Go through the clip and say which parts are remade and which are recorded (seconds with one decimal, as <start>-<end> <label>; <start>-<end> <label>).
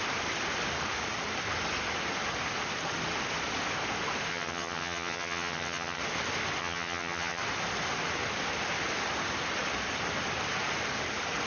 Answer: 0.0-4.3 recorded; 4.3-6.0 remade; 6.0-6.6 recorded; 6.6-7.4 remade; 7.4-11.5 recorded